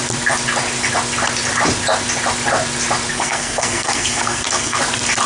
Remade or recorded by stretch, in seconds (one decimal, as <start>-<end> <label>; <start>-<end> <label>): 0.0-3.1 recorded; 3.1-4.8 remade; 4.8-5.3 recorded